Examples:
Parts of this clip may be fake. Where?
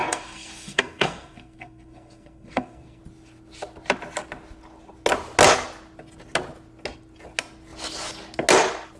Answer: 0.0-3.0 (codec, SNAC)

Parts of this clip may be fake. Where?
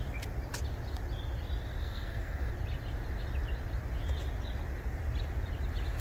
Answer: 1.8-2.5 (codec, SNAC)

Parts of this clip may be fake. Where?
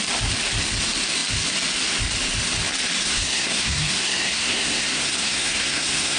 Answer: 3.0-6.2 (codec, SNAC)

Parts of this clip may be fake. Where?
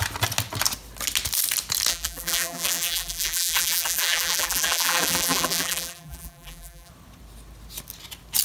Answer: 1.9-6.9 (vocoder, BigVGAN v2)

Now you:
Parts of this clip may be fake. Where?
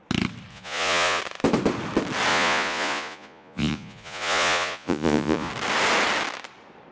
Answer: 0.5-1.2 (vocoder, Vocos); 2.3-5.5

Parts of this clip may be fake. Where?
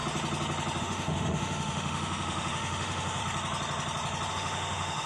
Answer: 0.8-3.2 (autoencoder, DAC-VAE); 4.3-5.1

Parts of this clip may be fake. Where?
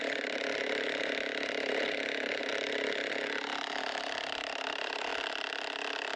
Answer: 0.0-2.5 (vocoder, BigVGAN v2); 3.8-5.1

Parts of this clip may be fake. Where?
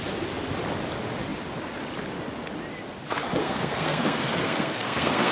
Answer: 3.4-5.3 (codec, SNAC)